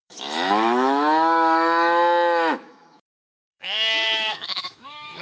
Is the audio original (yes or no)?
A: no